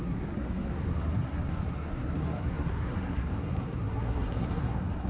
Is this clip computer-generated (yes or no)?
yes